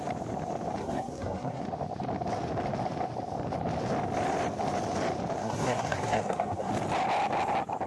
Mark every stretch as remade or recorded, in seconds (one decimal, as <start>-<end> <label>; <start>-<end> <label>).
0.0-0.8 recorded; 0.8-1.6 remade; 1.6-5.4 recorded; 5.4-6.7 remade; 6.7-7.9 recorded